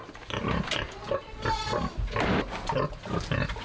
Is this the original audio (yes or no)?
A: yes